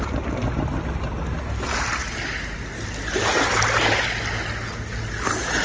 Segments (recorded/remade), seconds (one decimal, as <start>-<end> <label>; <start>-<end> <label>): 0.0-5.6 recorded